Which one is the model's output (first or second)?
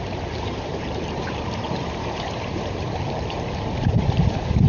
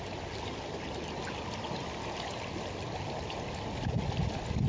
first